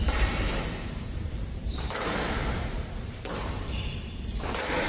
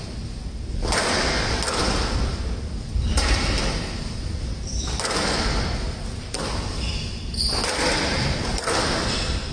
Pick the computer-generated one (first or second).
first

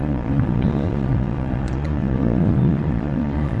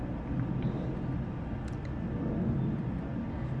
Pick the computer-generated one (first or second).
first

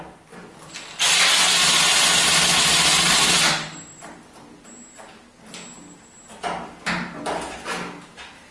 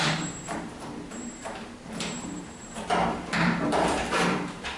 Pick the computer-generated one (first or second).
second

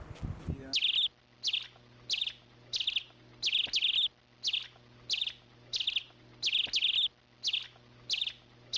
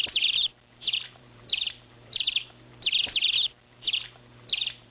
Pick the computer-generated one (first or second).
second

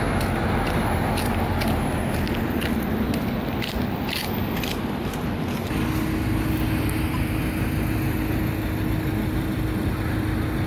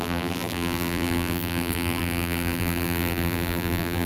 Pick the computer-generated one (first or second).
second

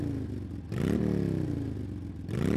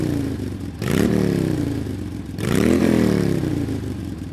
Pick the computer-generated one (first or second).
second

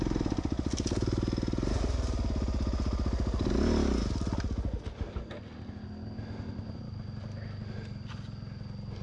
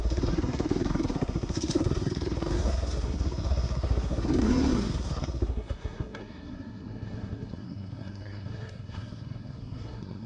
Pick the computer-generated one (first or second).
second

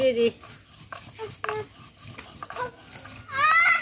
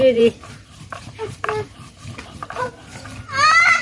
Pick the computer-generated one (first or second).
second